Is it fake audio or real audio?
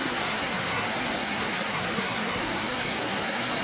fake